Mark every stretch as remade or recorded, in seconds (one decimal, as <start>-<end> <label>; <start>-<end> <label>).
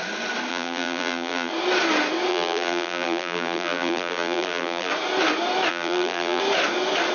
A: 0.0-0.5 recorded; 0.5-1.5 remade; 1.5-2.3 recorded; 2.3-4.9 remade; 4.9-5.7 recorded; 5.7-6.4 remade; 6.4-7.1 recorded